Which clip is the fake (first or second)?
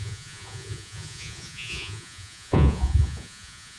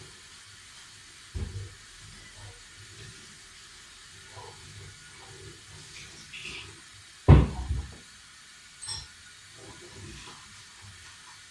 first